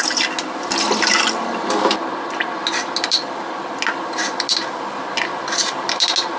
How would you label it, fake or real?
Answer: real